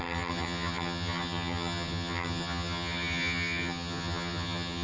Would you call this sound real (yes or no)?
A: no